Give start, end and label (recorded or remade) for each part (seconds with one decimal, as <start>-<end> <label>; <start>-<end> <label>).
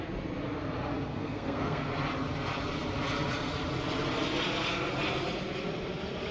0.0-1.1 recorded; 1.1-1.9 remade; 1.9-6.3 recorded